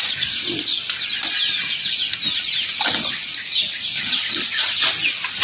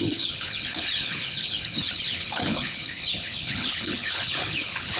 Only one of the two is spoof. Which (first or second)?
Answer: second